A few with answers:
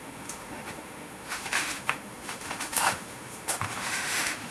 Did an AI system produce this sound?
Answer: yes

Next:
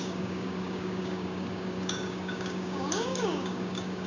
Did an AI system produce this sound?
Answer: yes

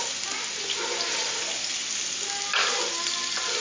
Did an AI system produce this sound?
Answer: no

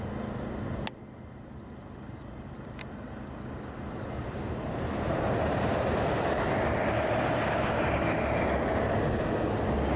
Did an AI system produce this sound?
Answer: no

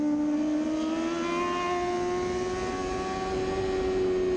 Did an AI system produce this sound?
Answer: no